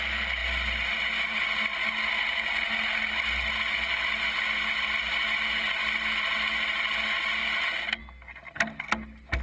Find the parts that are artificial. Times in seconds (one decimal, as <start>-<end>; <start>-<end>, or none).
none

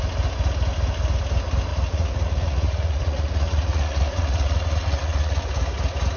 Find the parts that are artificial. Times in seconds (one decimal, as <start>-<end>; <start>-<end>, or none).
1.7-5.4

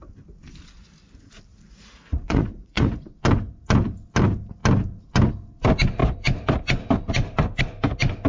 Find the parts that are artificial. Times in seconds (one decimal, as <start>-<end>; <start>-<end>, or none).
1.5-3.2